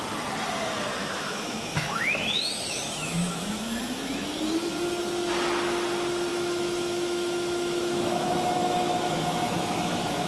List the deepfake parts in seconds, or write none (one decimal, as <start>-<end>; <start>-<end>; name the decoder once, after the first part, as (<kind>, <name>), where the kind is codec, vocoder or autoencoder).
1.0-4.7 (autoencoder, DAC-VAE); 6.3-10.3

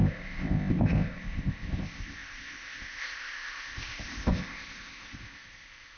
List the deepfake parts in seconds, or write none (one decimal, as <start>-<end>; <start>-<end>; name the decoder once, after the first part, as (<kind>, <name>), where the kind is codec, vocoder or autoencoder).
0.0-6.0 (codec, ZipCodec)

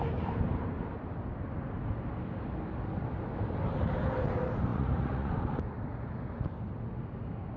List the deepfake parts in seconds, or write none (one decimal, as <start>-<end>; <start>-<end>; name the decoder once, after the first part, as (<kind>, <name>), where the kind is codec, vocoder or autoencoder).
4.7-5.3 (vocoder, Vocos)

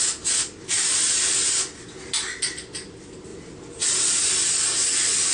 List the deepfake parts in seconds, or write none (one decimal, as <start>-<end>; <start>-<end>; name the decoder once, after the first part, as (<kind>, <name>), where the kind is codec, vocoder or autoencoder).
none